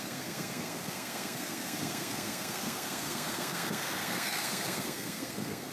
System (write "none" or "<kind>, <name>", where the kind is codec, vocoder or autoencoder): codec, SNAC